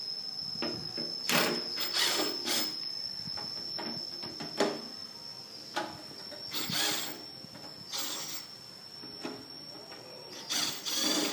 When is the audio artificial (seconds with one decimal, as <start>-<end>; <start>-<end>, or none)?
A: none